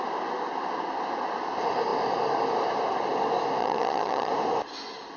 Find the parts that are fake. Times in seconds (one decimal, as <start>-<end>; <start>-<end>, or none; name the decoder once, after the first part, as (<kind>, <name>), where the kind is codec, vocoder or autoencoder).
3.6-4.3 (vocoder, HiFi-GAN)